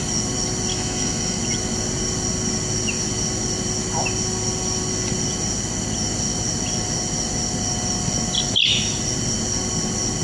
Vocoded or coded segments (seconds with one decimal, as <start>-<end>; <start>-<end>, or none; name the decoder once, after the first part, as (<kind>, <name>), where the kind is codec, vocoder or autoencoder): 0.7-1.4 (autoencoder, DAC-VAE)